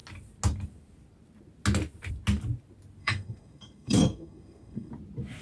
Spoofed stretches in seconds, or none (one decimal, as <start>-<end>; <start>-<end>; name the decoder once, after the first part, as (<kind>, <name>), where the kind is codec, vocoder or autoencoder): 3.0-4.9 (codec, SNAC)